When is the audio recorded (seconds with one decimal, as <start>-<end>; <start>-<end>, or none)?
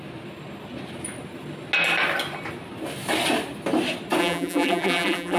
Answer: 0.0-4.2